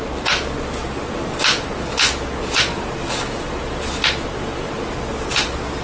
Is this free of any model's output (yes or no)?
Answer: yes